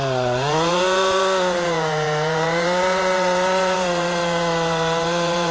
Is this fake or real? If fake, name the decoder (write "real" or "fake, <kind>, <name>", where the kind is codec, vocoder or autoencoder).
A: fake, vocoder, BigVGAN v2